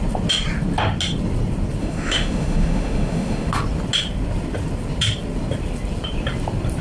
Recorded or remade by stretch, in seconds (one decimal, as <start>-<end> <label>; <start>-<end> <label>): 0.0-1.8 recorded; 1.8-3.5 remade; 3.5-6.8 recorded